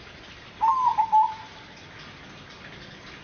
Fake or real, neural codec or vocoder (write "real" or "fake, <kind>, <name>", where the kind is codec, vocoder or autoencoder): real